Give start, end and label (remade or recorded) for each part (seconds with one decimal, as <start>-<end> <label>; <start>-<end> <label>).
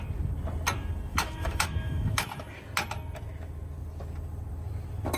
0.0-1.1 recorded; 1.1-2.5 remade; 2.5-5.2 recorded